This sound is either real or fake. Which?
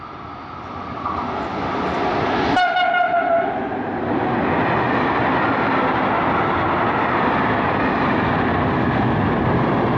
real